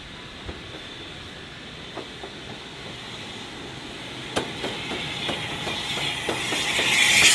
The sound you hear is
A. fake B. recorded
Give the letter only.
B